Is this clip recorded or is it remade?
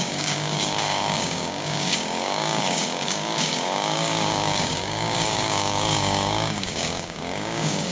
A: remade